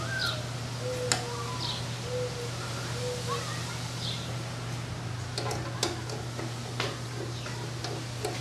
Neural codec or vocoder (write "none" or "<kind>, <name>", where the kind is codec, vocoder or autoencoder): none